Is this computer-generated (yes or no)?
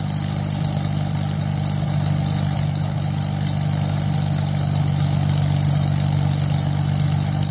no